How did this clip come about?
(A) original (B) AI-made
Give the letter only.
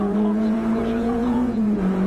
B